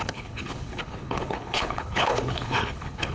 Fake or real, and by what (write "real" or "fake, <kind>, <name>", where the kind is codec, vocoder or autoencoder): fake, codec, HILCodec